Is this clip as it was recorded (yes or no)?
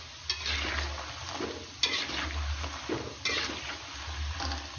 yes